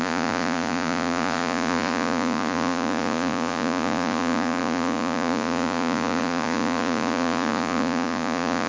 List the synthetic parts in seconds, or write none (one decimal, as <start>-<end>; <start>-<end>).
0.0-8.7